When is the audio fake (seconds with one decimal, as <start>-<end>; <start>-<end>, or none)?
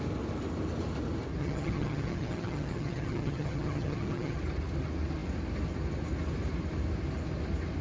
1.4-4.4